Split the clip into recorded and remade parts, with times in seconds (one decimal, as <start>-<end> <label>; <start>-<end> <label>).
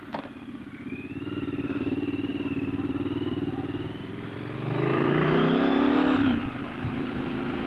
0.0-7.7 remade